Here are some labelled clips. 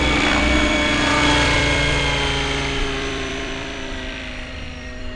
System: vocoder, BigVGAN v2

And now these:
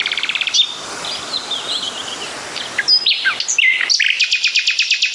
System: none